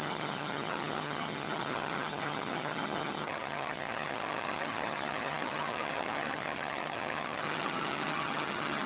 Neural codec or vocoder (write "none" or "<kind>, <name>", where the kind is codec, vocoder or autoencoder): vocoder, HiFi-GAN